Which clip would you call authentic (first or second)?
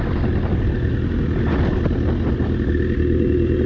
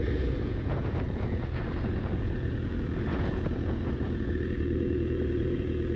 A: first